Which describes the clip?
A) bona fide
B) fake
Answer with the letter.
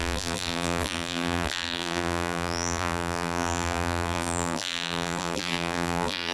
B